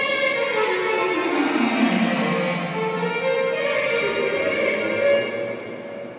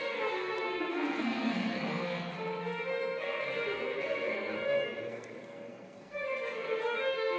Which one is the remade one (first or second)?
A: second